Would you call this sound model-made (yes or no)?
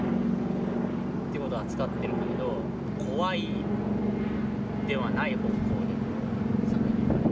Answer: no